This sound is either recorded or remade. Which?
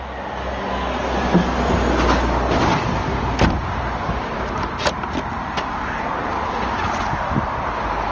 recorded